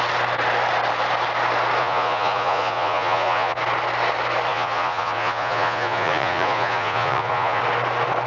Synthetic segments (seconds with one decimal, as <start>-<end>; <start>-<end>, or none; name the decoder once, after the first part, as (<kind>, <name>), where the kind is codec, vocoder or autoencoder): 1.8-3.6 (vocoder, Vocos); 4.5-7.6